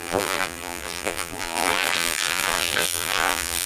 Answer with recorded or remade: remade